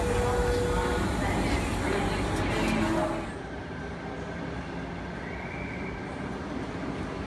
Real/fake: real